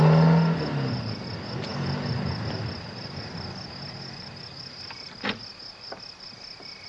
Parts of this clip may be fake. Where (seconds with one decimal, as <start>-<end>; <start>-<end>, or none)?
none